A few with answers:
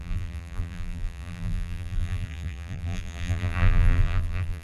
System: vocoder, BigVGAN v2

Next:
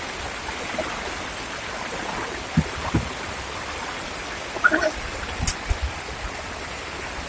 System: none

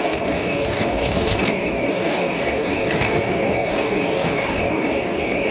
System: codec, DAC